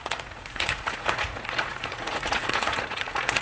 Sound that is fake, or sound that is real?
fake